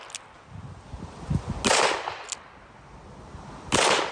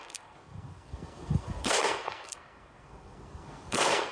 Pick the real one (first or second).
first